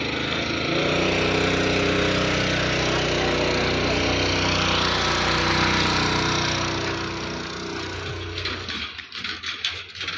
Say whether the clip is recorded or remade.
recorded